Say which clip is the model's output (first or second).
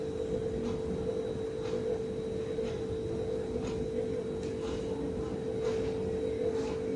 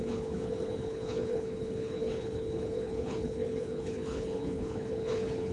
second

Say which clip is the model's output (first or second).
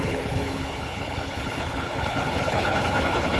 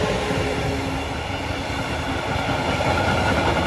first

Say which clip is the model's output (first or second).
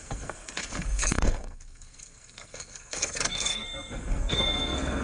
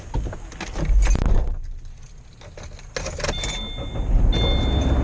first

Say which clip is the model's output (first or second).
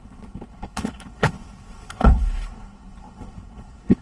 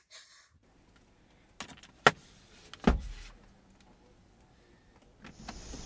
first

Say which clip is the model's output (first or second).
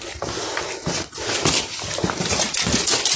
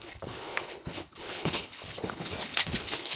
second